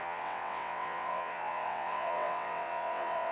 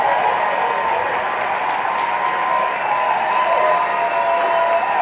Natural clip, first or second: second